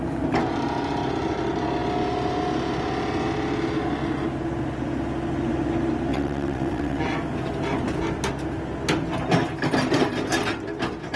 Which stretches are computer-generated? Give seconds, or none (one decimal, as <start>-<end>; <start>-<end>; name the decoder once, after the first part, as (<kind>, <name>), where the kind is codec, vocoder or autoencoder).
6.1-7.0 (vocoder, WaveNeXt)